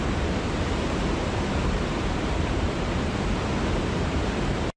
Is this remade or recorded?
remade